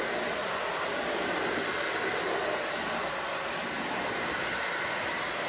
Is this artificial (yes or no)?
no